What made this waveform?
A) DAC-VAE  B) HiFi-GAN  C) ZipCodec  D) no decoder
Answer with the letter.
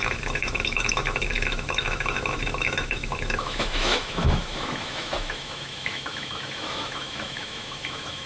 A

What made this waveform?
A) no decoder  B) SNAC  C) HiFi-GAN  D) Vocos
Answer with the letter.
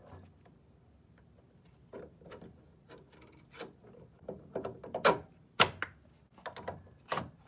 A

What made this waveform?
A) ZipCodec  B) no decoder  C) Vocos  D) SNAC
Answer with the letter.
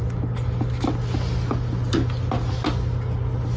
B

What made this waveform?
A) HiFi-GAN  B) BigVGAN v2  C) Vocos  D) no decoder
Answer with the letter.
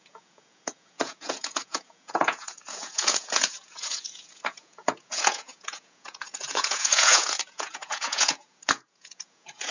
C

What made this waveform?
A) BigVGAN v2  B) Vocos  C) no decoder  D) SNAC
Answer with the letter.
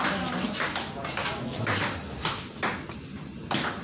C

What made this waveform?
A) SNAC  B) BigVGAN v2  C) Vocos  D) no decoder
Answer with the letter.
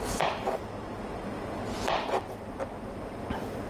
D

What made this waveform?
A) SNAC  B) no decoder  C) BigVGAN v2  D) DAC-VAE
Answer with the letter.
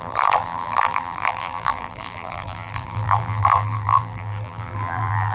C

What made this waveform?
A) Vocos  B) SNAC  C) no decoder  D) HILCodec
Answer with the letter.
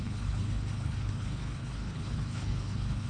D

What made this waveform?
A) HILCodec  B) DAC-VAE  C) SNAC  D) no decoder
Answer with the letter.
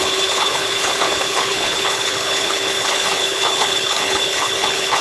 A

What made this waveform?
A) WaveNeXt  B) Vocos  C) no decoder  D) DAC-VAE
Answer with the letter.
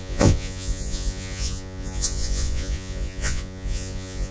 B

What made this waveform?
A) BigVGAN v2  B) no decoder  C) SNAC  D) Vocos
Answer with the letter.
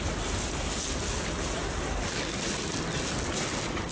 B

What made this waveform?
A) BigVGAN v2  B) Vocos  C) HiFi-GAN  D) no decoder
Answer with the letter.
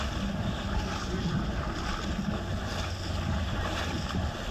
D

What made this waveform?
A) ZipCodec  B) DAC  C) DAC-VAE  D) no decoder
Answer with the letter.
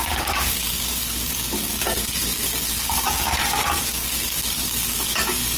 B